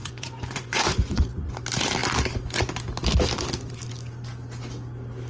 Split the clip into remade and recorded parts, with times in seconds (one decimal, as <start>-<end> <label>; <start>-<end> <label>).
0.0-1.5 remade; 1.5-5.3 recorded